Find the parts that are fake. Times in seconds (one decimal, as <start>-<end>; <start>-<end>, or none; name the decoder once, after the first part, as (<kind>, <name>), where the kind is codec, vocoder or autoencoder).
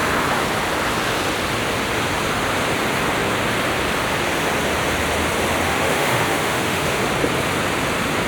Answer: 5.7-7.0 (autoencoder, DAC-VAE)